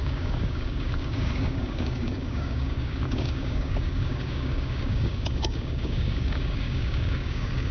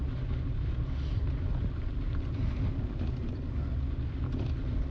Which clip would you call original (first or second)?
second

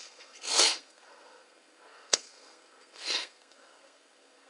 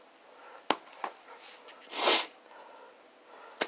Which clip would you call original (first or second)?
second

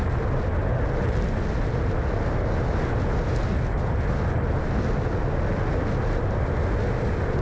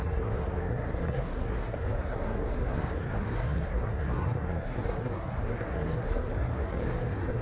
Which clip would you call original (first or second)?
first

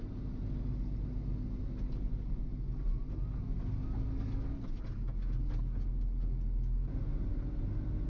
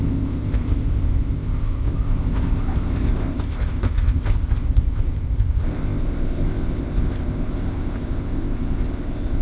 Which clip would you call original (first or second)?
first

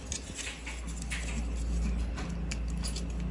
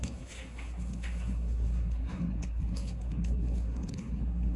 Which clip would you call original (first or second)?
first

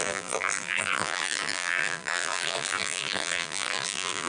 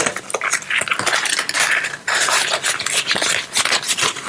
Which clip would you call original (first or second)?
second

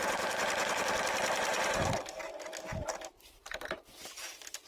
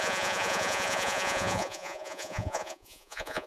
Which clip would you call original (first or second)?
first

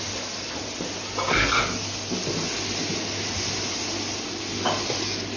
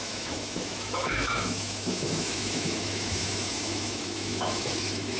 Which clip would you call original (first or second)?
first